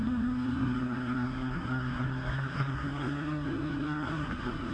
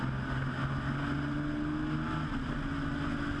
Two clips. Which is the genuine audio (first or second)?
second